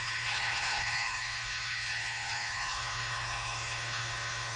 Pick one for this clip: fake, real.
fake